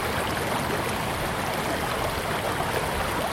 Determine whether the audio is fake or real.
real